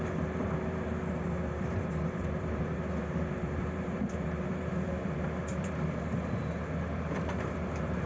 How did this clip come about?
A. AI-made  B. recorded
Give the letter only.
A